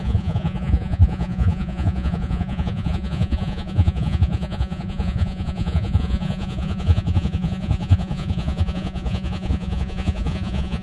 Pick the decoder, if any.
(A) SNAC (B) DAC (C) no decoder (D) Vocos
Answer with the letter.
D